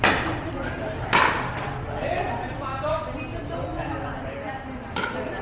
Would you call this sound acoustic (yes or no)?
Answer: yes